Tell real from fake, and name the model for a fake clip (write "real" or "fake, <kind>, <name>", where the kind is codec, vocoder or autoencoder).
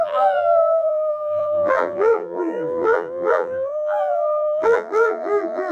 fake, vocoder, BigVGAN v2